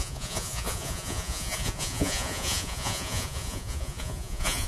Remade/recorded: remade